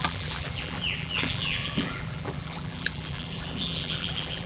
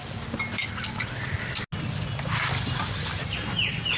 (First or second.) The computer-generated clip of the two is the first